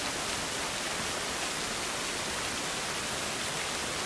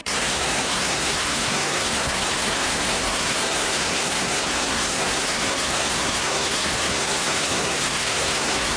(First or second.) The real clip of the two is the first